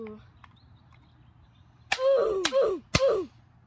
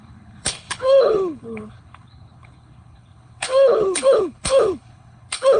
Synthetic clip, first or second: second